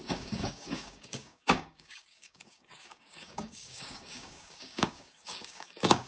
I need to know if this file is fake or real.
fake